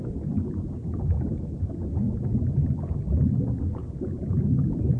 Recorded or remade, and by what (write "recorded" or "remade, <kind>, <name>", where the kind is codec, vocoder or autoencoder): recorded